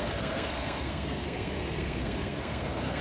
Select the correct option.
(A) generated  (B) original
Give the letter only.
A